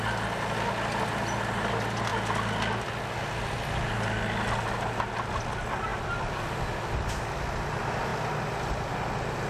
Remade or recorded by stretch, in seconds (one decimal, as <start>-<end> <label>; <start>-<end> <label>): 0.0-9.5 recorded